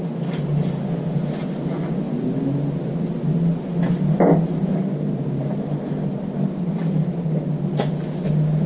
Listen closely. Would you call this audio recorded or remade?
recorded